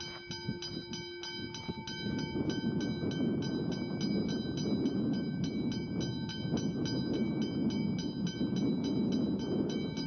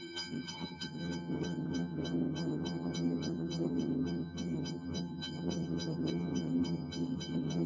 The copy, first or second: second